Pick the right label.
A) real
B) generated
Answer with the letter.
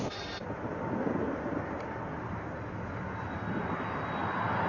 A